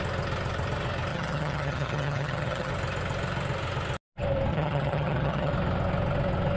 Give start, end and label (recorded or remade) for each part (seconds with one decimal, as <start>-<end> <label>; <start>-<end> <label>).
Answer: 0.0-1.1 recorded; 1.1-2.7 remade; 2.7-4.5 recorded; 4.5-5.5 remade; 5.5-6.6 recorded